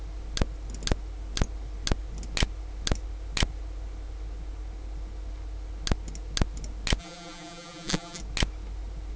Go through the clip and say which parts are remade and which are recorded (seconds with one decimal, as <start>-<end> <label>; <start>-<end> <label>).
0.0-7.0 recorded; 7.0-8.2 remade; 8.2-9.2 recorded